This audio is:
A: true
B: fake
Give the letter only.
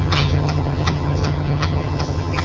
B